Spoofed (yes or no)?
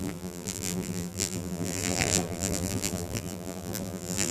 yes